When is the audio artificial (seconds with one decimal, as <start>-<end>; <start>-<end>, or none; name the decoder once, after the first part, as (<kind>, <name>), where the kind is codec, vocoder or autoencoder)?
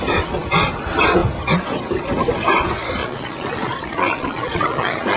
3.0-5.2 (vocoder, Vocos)